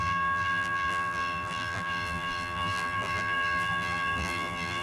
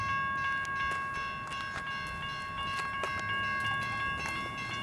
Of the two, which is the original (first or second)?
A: second